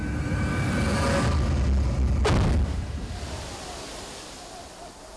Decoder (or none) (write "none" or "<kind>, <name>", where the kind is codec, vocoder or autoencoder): none